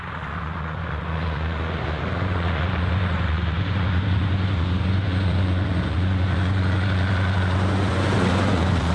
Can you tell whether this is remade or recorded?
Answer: remade